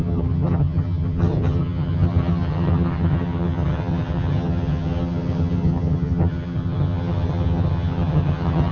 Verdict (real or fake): fake